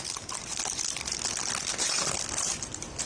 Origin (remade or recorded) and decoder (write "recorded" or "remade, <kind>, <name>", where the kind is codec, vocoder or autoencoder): recorded